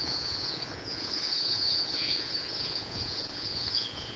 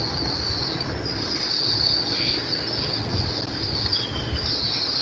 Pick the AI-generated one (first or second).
first